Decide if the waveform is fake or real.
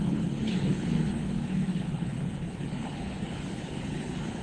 fake